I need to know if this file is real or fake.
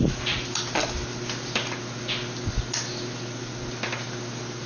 real